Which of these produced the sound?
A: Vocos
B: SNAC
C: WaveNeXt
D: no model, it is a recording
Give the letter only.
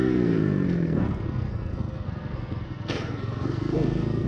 B